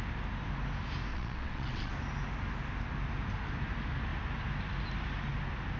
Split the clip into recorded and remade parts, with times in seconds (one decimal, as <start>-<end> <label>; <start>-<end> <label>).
0.0-1.1 recorded; 1.1-1.9 remade; 1.9-5.8 recorded